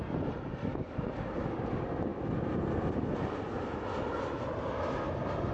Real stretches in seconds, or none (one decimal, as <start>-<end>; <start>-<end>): 0.0-0.7; 1.6-5.5